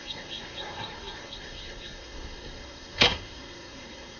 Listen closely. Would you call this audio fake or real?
fake